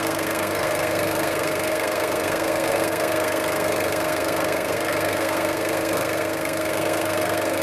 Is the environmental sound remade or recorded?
remade